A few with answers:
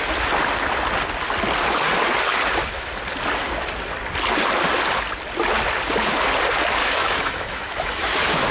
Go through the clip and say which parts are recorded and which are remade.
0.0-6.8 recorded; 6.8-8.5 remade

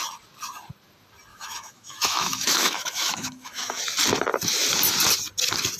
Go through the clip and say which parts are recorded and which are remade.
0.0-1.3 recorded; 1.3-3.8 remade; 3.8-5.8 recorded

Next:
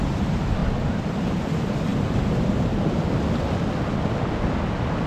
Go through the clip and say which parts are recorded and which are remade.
0.0-5.1 recorded